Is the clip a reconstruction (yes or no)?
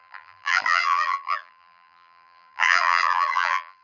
yes